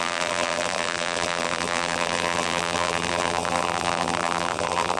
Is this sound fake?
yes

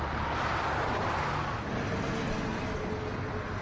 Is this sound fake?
no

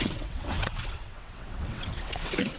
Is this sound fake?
yes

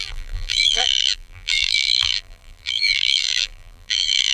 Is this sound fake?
yes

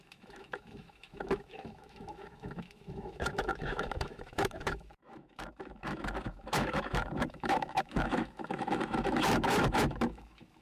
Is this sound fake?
yes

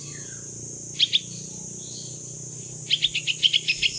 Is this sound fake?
no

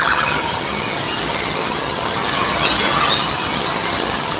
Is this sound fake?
yes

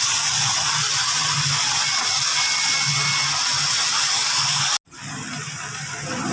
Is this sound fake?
no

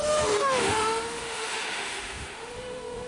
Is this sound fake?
yes